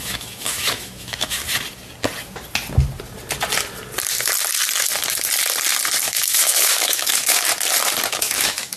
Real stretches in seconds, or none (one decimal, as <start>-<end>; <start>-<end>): 1.4-6.1; 7.5-8.1